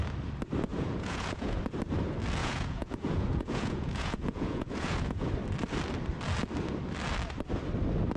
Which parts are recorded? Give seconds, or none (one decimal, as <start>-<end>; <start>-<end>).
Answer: 0.0-0.7; 1.6-2.4; 5.3-8.2